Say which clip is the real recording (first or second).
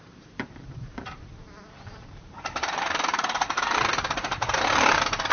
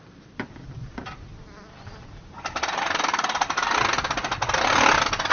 second